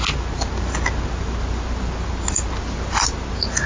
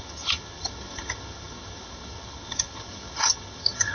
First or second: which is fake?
second